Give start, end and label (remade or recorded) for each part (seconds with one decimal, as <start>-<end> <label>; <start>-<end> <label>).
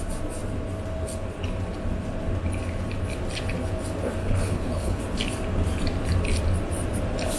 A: 0.0-4.2 recorded; 4.2-5.0 remade; 5.0-7.4 recorded